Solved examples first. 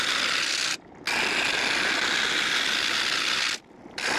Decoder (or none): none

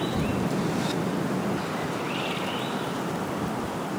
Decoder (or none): none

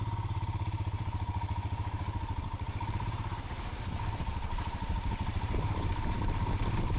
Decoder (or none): vocoder, BigVGAN v2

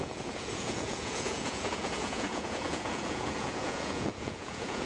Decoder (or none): vocoder, Vocos